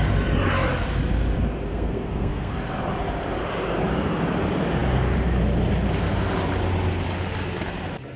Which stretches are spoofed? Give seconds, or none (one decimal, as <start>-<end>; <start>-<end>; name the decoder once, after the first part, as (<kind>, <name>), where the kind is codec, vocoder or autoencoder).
1.7-2.5 (codec, SNAC)